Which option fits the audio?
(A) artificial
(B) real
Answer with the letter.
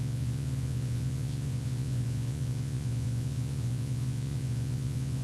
A